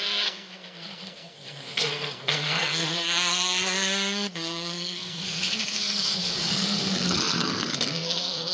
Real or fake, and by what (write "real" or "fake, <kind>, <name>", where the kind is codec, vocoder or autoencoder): fake, codec, SNAC